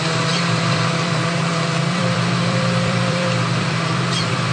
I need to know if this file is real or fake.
fake